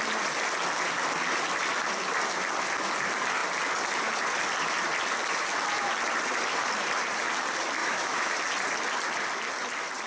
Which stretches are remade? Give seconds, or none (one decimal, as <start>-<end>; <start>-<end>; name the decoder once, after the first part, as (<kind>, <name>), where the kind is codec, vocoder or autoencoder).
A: 7.8-8.3 (autoencoder, DAC-VAE)